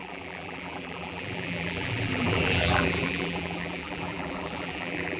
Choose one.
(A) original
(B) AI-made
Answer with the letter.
B